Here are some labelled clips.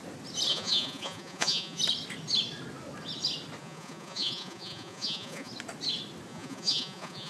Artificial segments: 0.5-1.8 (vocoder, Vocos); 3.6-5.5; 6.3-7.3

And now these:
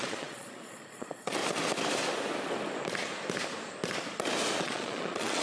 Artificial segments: 0.0-1.4 (vocoder, Vocos); 4.6-5.4

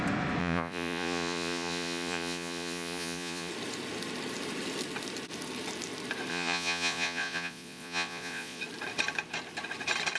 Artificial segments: 0.4-3.5 (vocoder, Vocos); 6.3-8.6

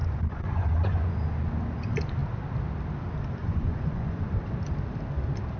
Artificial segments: 0.0-1.1 (vocoder, Vocos); 3.4-4.3